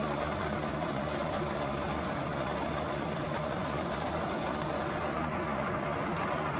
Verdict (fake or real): fake